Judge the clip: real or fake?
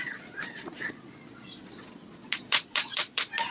fake